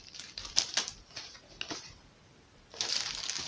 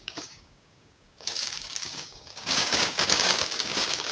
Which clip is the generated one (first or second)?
second